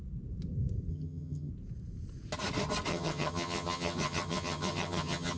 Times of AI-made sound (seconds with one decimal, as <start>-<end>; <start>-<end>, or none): 0.9-1.5; 2.9-5.4